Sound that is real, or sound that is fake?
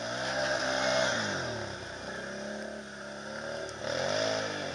real